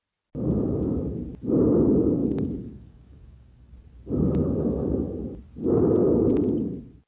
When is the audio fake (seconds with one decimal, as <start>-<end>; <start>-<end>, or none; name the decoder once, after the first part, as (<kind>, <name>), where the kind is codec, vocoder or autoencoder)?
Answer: 2.2-3.7 (codec, DAC); 4.4-5.2